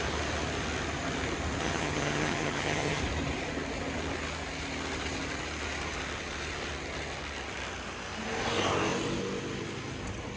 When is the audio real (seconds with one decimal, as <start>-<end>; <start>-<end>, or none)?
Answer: 0.0-1.6; 3.0-10.4